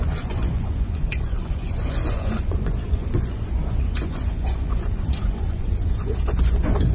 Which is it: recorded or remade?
remade